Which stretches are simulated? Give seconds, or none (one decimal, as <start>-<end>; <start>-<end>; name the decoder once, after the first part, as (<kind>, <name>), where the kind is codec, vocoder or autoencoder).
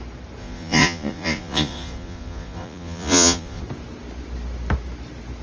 0.4-3.6 (vocoder, Vocos)